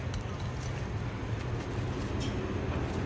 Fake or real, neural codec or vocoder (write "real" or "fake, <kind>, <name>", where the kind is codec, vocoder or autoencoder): real